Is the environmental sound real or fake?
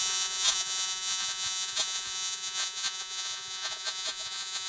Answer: fake